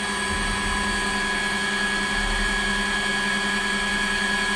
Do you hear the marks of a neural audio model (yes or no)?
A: no